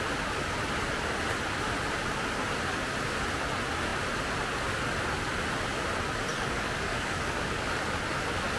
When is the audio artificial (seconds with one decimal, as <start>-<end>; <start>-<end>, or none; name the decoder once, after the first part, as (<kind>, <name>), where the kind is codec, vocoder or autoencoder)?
6.3-7.8 (codec, DAC)